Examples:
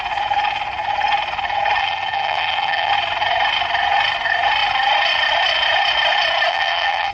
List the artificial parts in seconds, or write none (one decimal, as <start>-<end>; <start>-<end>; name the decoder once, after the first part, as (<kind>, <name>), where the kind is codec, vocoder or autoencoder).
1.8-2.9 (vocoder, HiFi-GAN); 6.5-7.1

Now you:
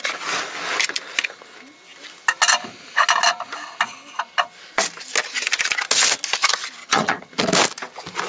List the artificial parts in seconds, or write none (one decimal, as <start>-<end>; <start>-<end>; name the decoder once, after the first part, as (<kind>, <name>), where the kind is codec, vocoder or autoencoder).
6.8-7.3 (vocoder, HiFi-GAN)

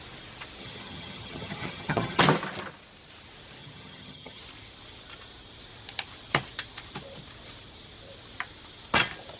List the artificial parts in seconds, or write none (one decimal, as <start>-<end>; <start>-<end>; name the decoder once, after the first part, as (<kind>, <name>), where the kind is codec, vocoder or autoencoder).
0.6-2.2 (vocoder, HiFi-GAN); 3.6-4.4

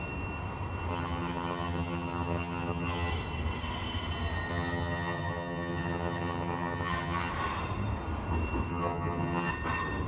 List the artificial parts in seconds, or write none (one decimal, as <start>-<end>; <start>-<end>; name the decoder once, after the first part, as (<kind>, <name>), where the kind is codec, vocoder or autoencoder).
0.9-3.1 (vocoder, HiFi-GAN); 4.5-7.3; 8.7-9.5

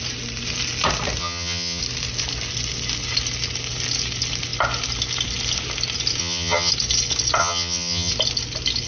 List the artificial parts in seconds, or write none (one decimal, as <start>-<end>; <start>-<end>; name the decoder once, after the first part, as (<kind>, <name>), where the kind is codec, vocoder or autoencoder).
1.2-1.8 (vocoder, HiFi-GAN); 6.2-6.7; 7.4-8.1